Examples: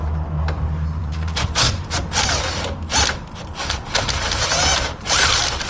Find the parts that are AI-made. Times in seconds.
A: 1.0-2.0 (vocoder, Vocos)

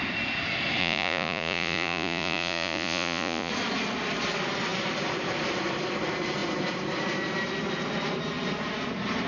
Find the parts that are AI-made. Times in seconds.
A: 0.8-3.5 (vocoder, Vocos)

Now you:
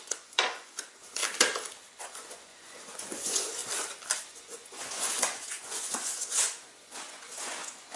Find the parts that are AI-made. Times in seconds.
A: 0.0-1.2 (vocoder, Vocos); 2.0-3.6; 4.3-8.0

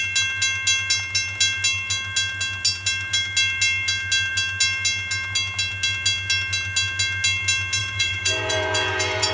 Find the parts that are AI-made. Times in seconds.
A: 7.8-9.3 (vocoder, Vocos)